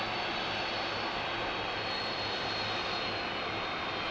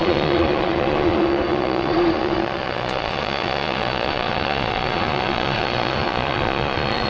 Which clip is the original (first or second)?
first